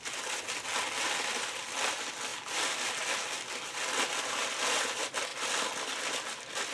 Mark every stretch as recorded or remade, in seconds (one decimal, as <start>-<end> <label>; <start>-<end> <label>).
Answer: 0.0-5.3 remade; 5.3-6.3 recorded; 6.3-6.7 remade